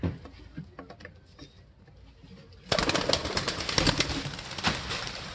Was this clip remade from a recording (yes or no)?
no